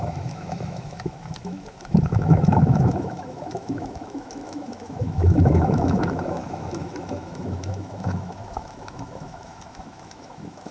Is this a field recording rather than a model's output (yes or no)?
no